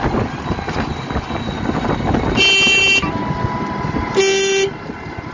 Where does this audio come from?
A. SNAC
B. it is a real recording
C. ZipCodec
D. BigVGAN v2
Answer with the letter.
B